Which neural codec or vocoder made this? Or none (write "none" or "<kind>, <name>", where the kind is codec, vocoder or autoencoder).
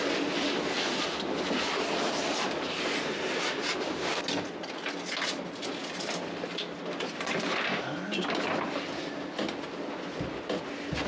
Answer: none